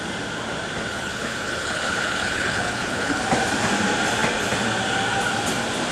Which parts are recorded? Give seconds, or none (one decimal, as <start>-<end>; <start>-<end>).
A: 0.0-0.9; 3.2-5.9